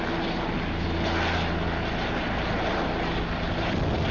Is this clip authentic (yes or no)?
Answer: yes